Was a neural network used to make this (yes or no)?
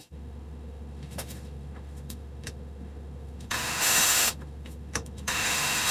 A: yes